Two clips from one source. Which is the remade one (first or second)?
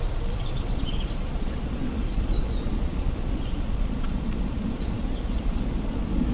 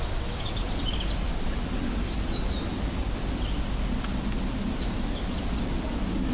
first